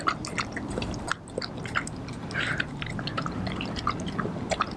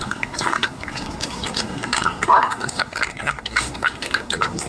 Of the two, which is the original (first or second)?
first